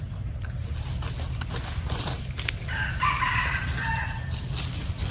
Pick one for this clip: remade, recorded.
recorded